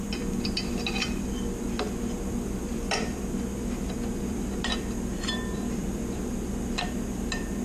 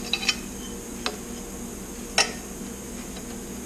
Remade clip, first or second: first